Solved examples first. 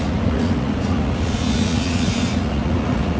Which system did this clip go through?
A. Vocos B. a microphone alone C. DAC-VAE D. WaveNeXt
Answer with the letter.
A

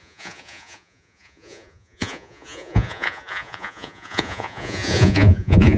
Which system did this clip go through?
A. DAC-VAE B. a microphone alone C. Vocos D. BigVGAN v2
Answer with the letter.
C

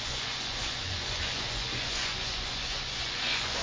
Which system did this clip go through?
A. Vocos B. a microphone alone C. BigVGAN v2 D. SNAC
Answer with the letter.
A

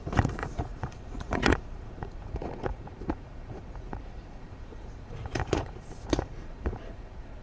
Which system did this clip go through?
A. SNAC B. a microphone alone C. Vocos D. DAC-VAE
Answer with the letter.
C